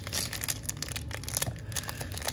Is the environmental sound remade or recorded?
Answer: recorded